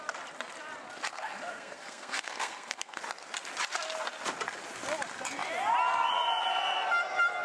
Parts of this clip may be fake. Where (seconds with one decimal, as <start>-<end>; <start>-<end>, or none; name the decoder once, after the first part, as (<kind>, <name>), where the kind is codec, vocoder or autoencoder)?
1.1-3.0 (codec, SNAC)